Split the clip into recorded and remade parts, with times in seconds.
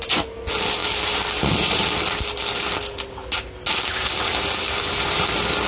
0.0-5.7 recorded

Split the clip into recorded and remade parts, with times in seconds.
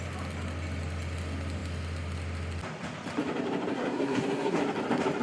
0.0-3.7 recorded; 3.7-4.6 remade; 4.6-5.2 recorded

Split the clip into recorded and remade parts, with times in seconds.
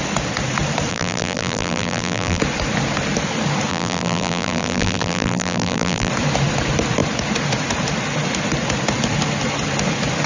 0.0-0.9 recorded; 0.9-2.4 remade; 2.4-3.7 recorded; 3.7-6.1 remade; 6.1-10.3 recorded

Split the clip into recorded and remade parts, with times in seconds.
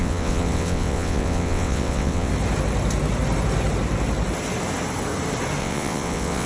0.0-2.3 remade; 2.3-5.6 recorded; 5.6-6.5 remade